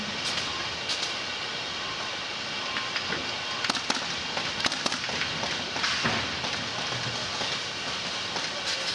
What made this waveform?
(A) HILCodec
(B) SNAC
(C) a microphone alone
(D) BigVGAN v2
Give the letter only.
C